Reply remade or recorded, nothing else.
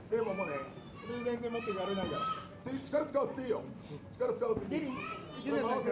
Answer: recorded